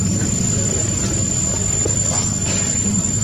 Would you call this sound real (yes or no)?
yes